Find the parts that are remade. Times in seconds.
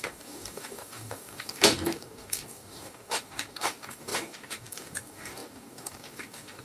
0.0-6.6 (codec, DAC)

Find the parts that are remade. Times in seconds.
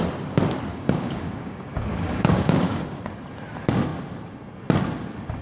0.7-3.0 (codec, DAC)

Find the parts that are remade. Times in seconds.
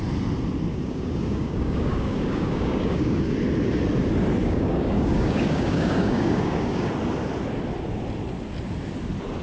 0.7-3.3 (codec, DAC); 4.4-6.9